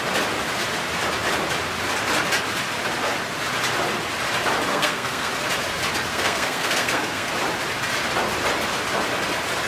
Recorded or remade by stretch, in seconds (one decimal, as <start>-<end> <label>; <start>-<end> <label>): 0.0-4.7 recorded; 4.7-5.3 remade; 5.3-6.1 recorded; 6.1-7.3 remade; 7.3-9.7 recorded